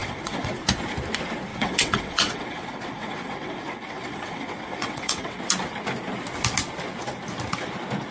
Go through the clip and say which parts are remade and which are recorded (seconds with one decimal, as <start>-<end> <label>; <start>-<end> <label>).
0.0-0.5 remade; 0.5-1.5 recorded; 1.5-5.4 remade; 5.4-8.1 recorded